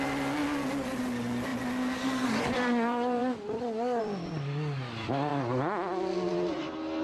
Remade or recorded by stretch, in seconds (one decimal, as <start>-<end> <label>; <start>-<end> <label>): 0.0-0.4 remade; 0.4-1.0 recorded; 1.0-3.2 remade; 3.2-4.0 recorded; 4.0-5.3 remade; 5.3-7.0 recorded